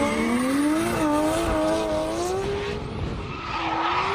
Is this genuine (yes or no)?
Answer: yes